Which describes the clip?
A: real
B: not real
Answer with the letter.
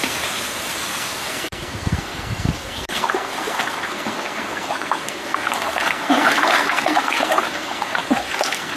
B